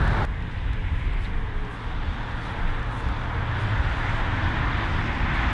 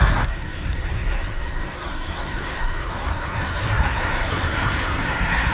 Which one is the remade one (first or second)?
second